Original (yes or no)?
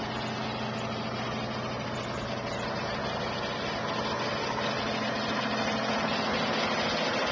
yes